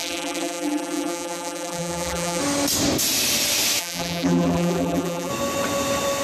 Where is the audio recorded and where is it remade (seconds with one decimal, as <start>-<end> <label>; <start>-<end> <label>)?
0.0-2.4 remade; 2.4-3.8 recorded; 3.8-5.3 remade; 5.3-6.2 recorded